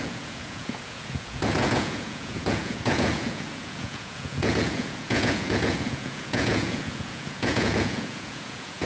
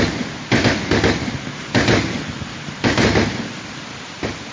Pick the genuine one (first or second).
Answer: second